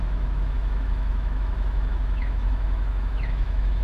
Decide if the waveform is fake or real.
fake